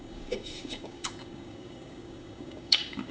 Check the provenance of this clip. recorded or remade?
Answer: remade